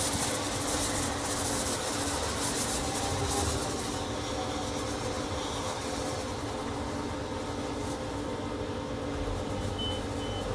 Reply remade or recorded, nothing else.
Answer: recorded